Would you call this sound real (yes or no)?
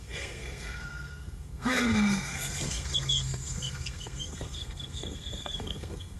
no